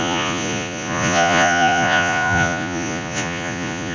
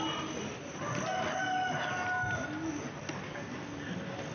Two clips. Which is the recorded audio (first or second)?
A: second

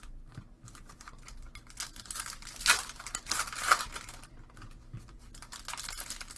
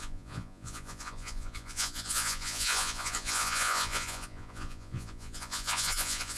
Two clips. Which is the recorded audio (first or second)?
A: first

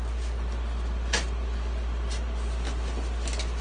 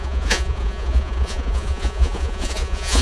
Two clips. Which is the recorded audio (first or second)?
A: first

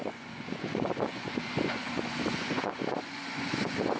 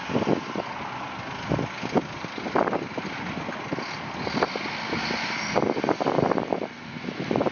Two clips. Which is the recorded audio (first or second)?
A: second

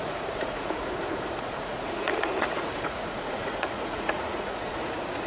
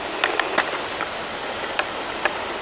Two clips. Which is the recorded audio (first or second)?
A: second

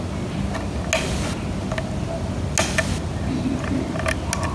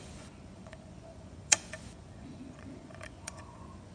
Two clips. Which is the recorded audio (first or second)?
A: first